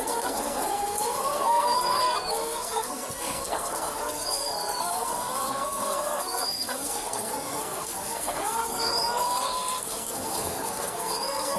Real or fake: fake